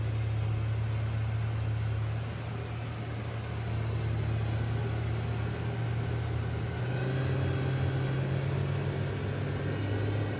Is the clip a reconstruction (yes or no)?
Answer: no